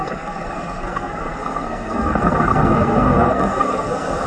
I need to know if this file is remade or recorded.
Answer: remade